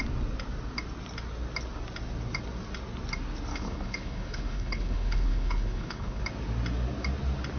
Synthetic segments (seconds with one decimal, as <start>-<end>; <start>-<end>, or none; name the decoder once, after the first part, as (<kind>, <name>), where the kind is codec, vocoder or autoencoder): 3.5-6.2 (codec, HILCodec)